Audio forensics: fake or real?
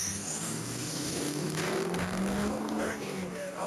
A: fake